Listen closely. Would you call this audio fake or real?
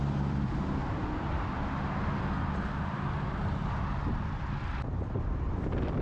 fake